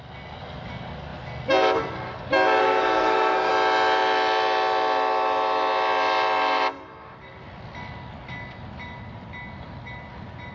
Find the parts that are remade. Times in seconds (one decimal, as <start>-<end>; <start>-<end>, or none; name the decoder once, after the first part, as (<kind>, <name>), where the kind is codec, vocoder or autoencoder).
2.6-3.5 (codec, SNAC)